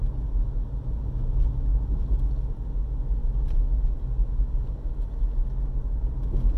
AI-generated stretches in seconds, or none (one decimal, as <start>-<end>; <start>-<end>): none